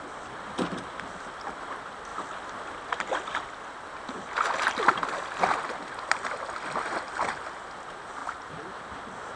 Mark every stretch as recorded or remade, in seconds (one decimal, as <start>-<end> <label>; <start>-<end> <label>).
0.0-8.2 recorded; 8.2-9.4 remade

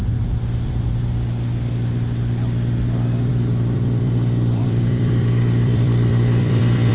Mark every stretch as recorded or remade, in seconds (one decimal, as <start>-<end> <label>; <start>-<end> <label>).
0.0-3.3 recorded; 3.3-6.9 remade

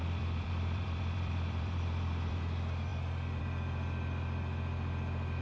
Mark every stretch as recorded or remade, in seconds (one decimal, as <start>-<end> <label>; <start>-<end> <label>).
0.0-2.4 remade; 2.4-5.4 recorded

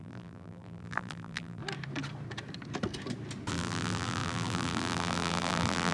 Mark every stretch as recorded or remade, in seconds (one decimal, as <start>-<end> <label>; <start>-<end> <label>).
0.0-1.6 remade; 1.6-3.5 recorded; 3.5-5.9 remade

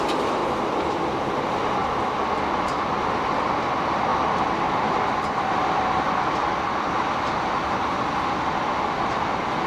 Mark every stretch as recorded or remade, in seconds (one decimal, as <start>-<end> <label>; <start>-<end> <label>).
0.0-0.4 recorded; 0.4-1.2 remade; 1.2-1.8 recorded; 1.8-2.5 remade; 2.5-4.1 recorded; 4.1-5.7 remade; 5.7-9.7 recorded